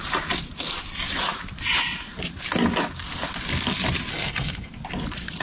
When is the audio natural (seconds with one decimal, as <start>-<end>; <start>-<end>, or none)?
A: 0.0-4.1; 4.7-5.4

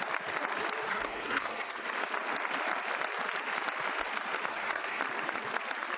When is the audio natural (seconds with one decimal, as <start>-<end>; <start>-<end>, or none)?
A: 0.0-0.9; 1.9-4.5; 5.0-6.0

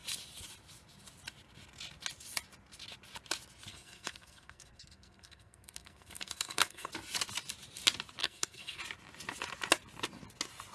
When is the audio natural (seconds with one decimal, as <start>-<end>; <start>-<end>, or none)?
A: 0.0-3.7; 6.9-8.2; 8.8-10.7

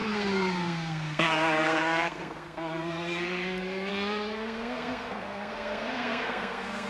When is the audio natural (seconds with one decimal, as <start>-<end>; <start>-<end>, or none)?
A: none

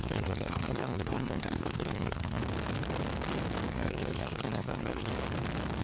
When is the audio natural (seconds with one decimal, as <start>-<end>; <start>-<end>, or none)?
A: 2.4-3.7; 5.1-5.8

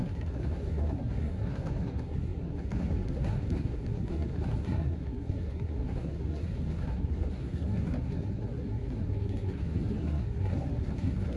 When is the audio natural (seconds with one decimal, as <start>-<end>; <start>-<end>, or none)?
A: none